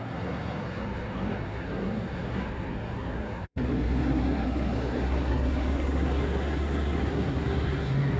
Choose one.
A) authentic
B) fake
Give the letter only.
B